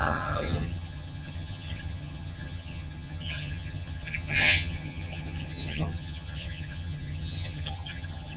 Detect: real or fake fake